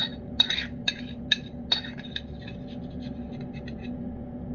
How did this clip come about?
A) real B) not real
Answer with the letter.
A